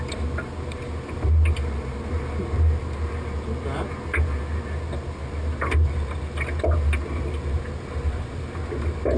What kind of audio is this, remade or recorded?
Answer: recorded